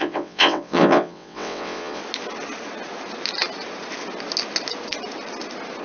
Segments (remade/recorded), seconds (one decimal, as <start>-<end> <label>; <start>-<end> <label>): 0.0-2.0 remade; 2.0-5.8 recorded